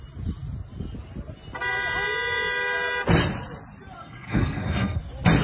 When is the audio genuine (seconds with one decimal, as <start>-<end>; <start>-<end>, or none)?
0.0-4.0; 5.0-5.4